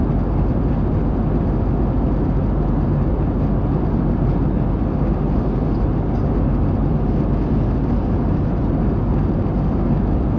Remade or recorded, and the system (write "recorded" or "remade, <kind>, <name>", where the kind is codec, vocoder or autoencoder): recorded